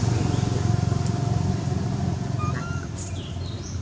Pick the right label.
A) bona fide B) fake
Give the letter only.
A